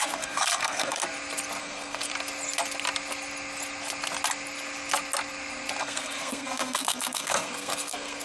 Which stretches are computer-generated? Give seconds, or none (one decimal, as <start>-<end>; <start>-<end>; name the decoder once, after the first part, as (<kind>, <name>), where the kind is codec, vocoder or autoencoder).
0.0-1.0 (codec, SNAC); 1.6-2.1; 5.8-8.2